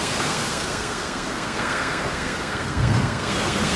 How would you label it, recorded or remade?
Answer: remade